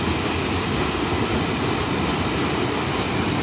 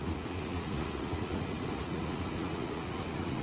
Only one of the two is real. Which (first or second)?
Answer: first